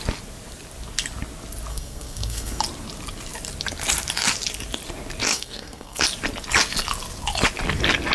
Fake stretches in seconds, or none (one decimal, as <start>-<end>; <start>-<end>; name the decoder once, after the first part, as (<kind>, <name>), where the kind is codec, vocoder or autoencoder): 1.7-2.6 (codec, SNAC); 5.3-6.0